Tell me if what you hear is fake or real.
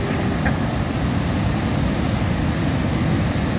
real